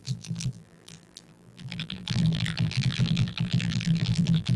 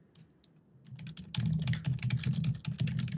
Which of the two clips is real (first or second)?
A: second